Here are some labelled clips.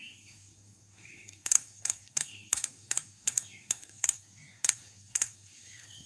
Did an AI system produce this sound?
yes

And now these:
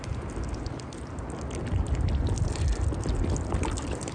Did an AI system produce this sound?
no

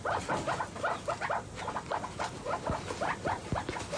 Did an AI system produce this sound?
no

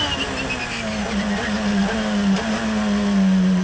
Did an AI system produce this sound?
no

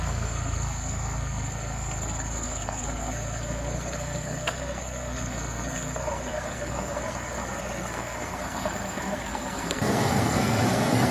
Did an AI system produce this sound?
yes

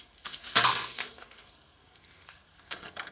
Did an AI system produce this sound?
yes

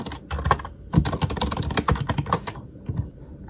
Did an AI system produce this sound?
no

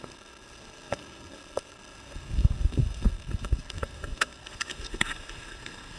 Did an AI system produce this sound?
yes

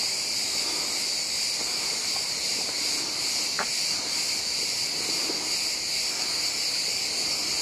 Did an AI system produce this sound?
no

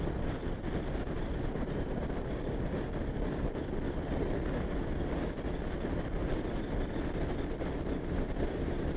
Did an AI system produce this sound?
no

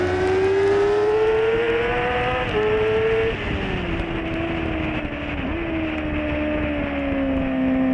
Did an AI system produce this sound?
no